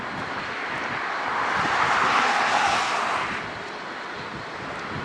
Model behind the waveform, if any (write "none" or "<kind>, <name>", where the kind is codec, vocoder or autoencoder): none